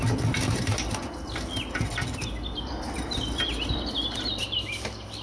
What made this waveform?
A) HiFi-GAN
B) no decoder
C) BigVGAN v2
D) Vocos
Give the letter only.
B